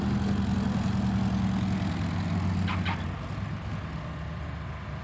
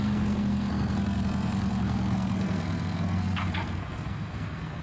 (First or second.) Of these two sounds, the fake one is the second